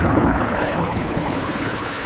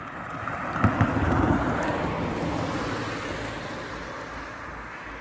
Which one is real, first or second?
second